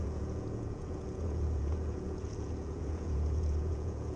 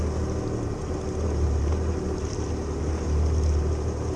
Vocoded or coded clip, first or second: first